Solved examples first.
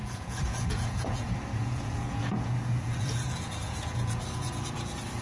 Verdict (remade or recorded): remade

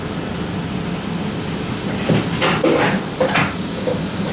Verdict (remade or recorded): recorded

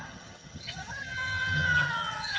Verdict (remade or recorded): remade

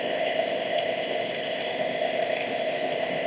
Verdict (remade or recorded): remade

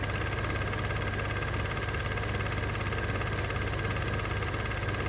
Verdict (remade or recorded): recorded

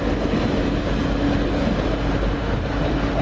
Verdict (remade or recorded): recorded